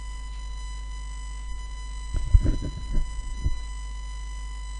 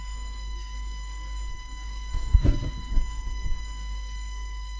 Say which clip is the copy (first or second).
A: second